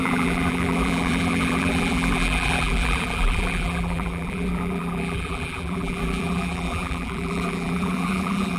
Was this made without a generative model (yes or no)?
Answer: no